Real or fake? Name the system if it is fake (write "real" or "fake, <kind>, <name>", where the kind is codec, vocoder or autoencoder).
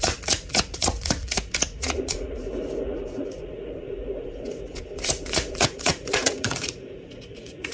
fake, vocoder, Vocos